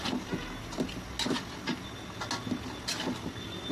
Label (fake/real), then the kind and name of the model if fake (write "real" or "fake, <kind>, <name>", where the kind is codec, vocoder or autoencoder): real